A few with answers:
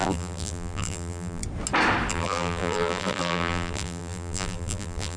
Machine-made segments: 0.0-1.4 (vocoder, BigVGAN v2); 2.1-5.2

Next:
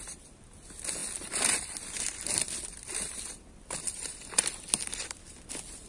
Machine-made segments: 0.0-5.9 (vocoder, BigVGAN v2)